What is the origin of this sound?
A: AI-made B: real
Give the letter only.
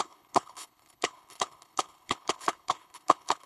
A